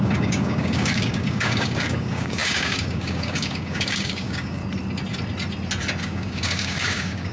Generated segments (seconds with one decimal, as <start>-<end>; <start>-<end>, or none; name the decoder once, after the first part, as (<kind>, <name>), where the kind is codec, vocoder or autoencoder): 0.0-4.6 (codec, DAC); 6.0-7.3